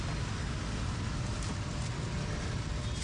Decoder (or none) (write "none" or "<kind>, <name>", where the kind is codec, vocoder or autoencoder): none